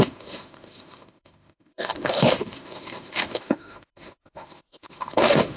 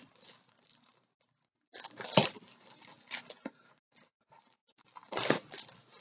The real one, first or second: second